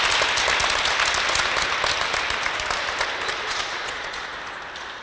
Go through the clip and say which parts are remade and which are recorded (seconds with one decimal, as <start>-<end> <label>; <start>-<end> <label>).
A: 0.0-3.4 recorded; 3.4-4.3 remade; 4.3-5.0 recorded